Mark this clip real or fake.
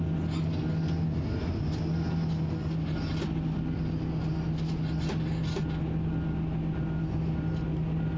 real